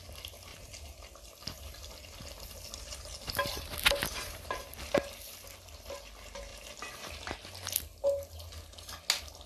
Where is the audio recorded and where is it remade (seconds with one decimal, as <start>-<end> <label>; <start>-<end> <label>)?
0.0-0.5 recorded; 0.5-2.5 remade; 2.5-6.5 recorded; 6.5-7.1 remade; 7.1-9.5 recorded